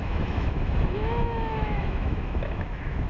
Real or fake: fake